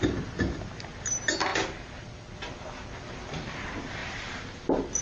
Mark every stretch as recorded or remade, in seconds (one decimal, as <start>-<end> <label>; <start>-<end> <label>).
0.0-4.0 recorded; 4.0-4.6 remade; 4.6-5.0 recorded